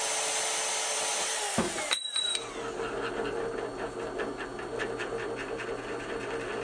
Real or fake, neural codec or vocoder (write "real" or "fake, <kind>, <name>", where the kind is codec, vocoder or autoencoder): real